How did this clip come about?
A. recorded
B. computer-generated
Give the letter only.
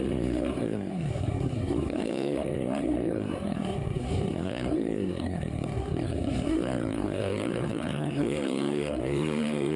B